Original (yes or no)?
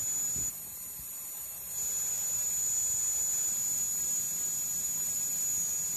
yes